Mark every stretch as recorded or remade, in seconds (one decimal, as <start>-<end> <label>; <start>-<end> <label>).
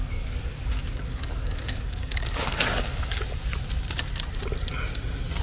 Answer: 0.0-3.2 remade; 3.2-5.4 recorded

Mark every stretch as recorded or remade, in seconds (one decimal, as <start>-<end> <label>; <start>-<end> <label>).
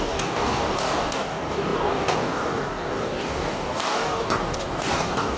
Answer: 0.0-5.4 remade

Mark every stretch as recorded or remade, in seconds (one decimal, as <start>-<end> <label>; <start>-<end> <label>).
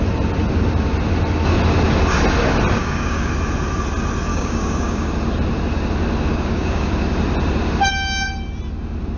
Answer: 0.0-2.8 recorded; 2.8-3.3 remade; 3.3-4.3 recorded; 4.3-5.1 remade; 5.1-6.3 recorded; 6.3-6.9 remade; 6.9-9.2 recorded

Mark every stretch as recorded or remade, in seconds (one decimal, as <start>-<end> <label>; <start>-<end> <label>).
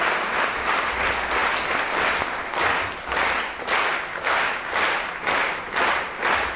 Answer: 0.0-4.1 recorded; 4.1-4.7 remade; 4.7-6.6 recorded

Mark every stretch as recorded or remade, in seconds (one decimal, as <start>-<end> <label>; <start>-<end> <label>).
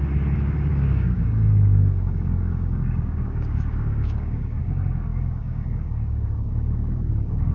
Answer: 0.0-0.7 recorded; 0.7-4.6 remade; 4.6-5.1 recorded; 5.1-7.5 remade